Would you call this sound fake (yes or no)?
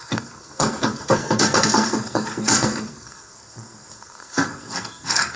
yes